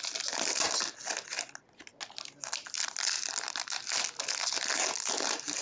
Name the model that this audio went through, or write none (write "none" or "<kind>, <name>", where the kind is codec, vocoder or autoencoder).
none